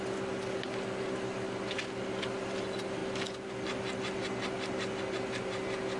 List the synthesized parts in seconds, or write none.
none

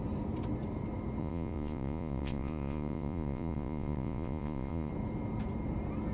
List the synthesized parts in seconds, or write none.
1.2-4.9